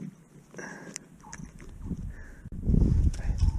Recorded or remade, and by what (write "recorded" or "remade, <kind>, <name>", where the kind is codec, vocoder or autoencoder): recorded